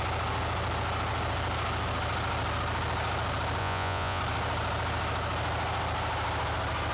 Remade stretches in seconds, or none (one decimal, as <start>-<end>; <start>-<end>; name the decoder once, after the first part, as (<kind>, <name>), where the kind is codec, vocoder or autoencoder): 3.6-4.2 (vocoder, Vocos)